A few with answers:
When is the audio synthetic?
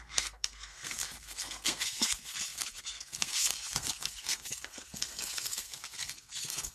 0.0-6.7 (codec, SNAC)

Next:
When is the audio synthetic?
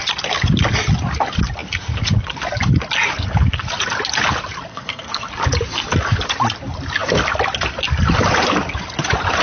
4.7-5.3 (codec, SNAC)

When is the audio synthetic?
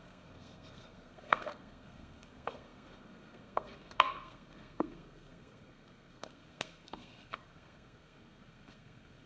0.0-9.3 (codec, SNAC)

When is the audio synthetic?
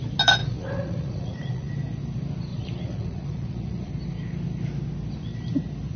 0.4-1.7 (vocoder, Vocos); 2.5-3.9